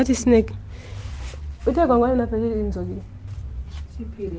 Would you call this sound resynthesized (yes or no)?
no